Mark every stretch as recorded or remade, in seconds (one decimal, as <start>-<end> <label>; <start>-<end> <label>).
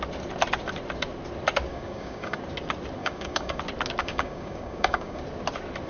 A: 0.0-1.7 recorded; 1.7-2.4 remade; 2.4-3.0 recorded; 3.0-3.6 remade; 3.6-4.0 recorded; 4.0-5.2 remade; 5.2-5.9 recorded